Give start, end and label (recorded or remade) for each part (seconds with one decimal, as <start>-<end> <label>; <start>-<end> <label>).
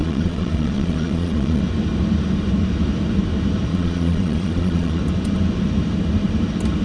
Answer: 0.0-1.6 remade; 1.6-3.7 recorded; 3.7-5.0 remade; 5.0-6.8 recorded